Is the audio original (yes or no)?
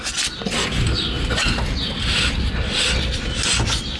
yes